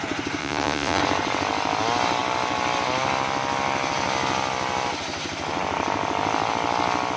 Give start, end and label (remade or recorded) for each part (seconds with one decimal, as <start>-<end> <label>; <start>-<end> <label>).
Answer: 0.0-0.4 recorded; 0.4-1.0 remade; 1.0-7.2 recorded